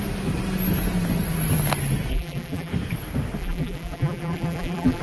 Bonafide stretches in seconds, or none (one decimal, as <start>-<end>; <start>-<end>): 0.0-2.1; 2.7-3.4